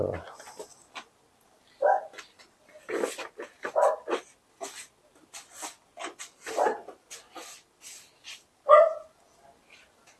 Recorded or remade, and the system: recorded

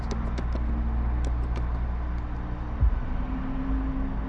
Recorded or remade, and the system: recorded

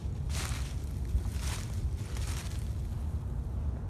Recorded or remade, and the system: recorded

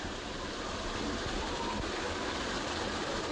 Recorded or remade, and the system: recorded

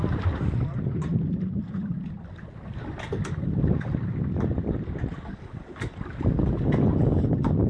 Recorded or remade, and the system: recorded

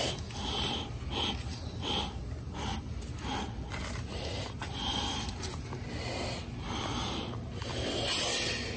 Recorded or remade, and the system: recorded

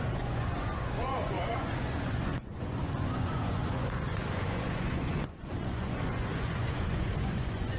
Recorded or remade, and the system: remade, vocoder, Vocos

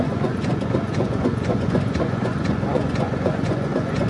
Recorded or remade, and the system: remade, vocoder, Vocos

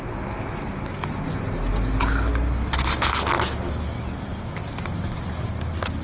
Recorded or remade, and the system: recorded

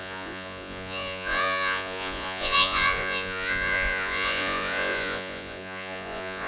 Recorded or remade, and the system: remade, vocoder, Vocos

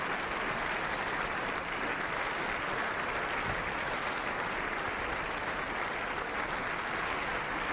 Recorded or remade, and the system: recorded